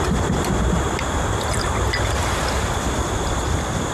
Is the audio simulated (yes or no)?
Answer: no